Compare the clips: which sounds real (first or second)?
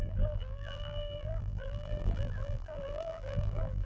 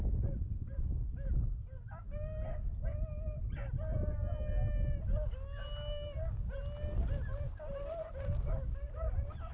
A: second